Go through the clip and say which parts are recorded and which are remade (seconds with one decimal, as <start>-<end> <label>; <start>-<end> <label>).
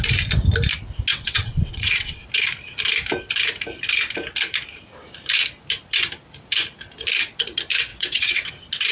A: 0.0-1.1 recorded; 1.1-2.3 remade; 2.3-7.9 recorded; 7.9-8.5 remade; 8.5-8.9 recorded